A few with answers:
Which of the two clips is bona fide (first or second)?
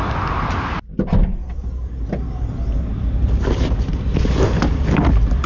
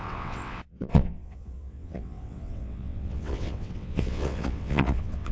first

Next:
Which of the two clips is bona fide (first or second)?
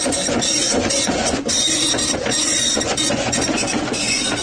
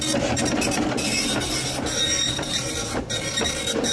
second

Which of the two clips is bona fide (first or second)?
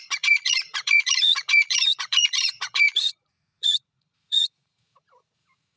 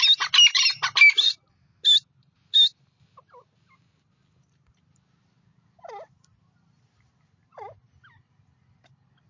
second